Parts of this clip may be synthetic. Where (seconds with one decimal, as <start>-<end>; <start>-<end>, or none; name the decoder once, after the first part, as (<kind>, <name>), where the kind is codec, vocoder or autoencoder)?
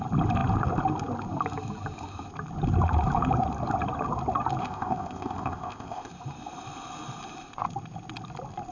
4.6-6.1 (codec, ZipCodec)